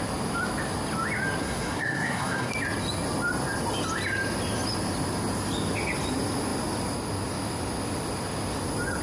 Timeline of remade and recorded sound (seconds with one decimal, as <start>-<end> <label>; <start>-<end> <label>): 0.0-1.4 recorded; 1.4-2.5 remade; 2.5-9.0 recorded